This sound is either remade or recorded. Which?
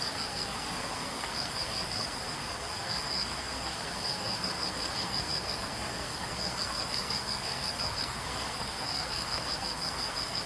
remade